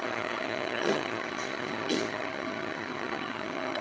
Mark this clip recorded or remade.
remade